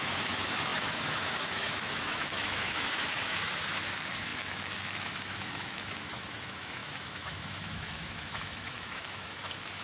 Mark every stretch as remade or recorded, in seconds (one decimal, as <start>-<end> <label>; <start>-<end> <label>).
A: 0.0-9.8 remade